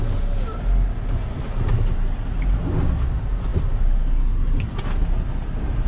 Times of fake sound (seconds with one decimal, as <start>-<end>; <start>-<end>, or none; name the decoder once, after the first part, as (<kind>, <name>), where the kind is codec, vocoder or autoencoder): 3.5-4.1 (vocoder, BigVGAN v2); 5.0-5.9